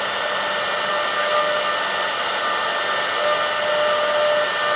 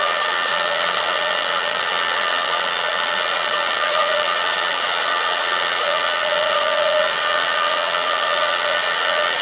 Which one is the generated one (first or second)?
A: second